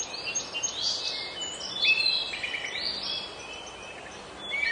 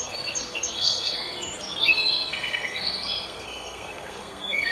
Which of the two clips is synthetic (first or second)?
second